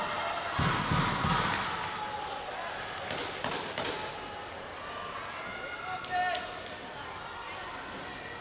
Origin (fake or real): real